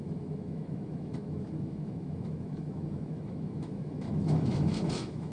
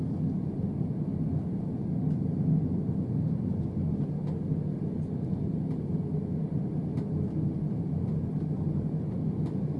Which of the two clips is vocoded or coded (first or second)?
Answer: first